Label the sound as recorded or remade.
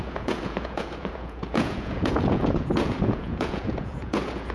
remade